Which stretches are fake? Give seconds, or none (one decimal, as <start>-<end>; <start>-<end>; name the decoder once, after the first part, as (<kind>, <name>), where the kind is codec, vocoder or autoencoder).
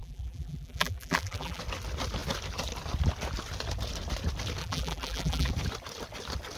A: 0.0-1.6 (vocoder, BigVGAN v2); 4.6-5.5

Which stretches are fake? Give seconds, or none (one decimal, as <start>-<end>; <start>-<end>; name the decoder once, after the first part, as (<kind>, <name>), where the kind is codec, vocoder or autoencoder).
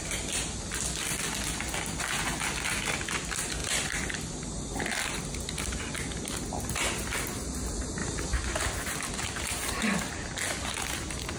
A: 3.6-5.1 (vocoder, BigVGAN v2); 8.0-8.6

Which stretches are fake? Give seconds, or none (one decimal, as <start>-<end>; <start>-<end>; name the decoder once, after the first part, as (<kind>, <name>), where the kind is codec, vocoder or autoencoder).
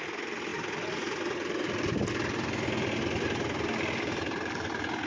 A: none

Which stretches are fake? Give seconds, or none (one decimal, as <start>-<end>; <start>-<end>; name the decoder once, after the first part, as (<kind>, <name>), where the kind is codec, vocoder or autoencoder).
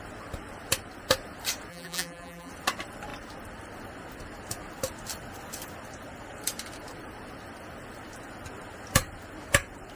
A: 1.7-2.5 (vocoder, BigVGAN v2)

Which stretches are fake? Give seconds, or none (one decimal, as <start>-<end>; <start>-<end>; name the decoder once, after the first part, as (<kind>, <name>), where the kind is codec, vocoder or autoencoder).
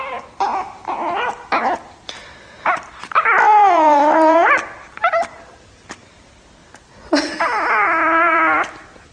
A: 0.0-6.6 (vocoder, BigVGAN v2); 7.3-9.1